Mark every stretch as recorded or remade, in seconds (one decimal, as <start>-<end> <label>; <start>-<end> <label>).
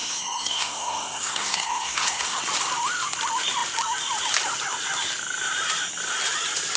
0.0-2.4 remade; 2.4-6.8 recorded